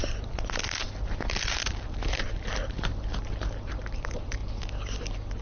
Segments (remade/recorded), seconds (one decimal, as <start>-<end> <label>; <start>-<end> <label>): 0.0-1.5 recorded; 1.5-2.9 remade; 2.9-3.7 recorded; 3.7-4.4 remade; 4.4-5.4 recorded